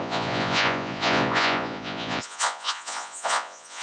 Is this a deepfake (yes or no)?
yes